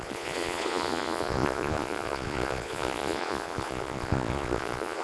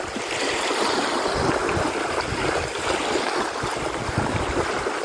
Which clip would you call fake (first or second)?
first